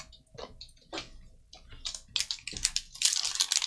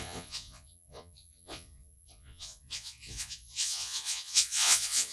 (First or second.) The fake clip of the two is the second